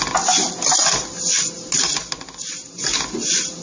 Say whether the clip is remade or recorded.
recorded